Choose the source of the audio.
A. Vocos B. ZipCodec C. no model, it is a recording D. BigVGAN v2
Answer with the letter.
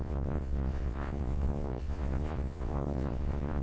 A